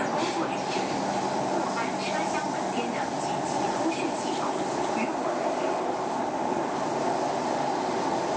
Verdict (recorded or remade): recorded